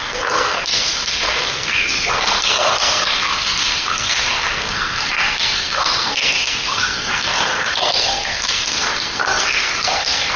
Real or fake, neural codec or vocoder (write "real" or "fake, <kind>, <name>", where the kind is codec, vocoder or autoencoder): fake, codec, SNAC